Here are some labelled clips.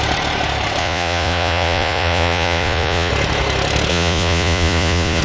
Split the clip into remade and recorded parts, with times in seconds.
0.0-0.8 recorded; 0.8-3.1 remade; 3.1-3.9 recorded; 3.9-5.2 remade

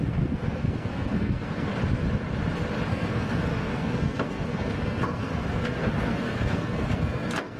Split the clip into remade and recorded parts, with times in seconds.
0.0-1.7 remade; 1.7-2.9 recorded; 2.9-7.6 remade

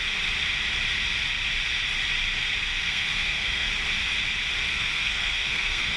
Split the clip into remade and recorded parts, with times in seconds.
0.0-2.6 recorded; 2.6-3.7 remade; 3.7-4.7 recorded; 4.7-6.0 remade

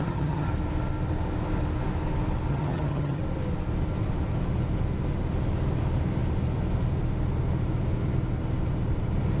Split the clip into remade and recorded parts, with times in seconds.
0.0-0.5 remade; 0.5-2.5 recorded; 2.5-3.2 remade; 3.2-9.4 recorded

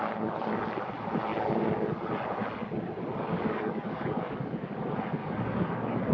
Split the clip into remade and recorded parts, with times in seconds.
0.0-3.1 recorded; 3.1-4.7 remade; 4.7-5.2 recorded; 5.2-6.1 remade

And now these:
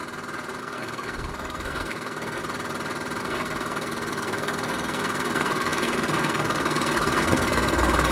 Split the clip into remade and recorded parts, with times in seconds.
0.0-0.6 recorded; 0.6-2.4 remade; 2.4-3.2 recorded; 3.2-8.1 remade

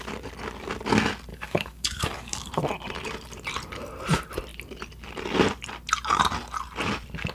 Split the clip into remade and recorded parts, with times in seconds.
0.0-1.3 recorded; 1.3-2.5 remade; 2.5-7.3 recorded

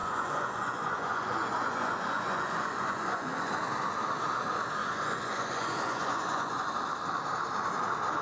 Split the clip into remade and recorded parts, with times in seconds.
0.0-3.5 remade; 3.5-4.8 recorded; 4.8-6.7 remade; 6.7-8.2 recorded